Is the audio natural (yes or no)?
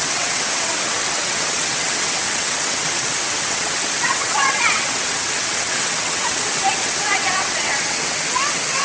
no